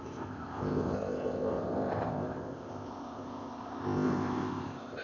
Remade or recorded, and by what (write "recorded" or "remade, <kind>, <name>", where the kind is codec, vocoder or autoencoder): remade, codec, ZipCodec